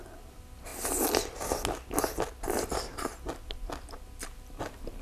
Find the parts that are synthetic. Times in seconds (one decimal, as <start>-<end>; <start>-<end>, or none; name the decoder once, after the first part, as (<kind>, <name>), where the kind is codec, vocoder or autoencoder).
none